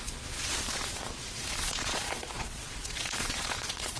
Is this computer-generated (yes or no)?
yes